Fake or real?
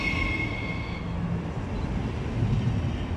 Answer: real